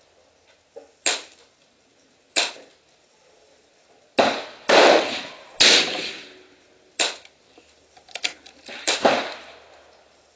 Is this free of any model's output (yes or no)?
yes